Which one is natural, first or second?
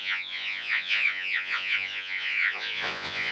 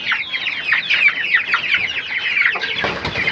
second